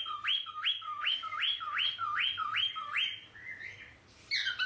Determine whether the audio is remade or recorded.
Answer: remade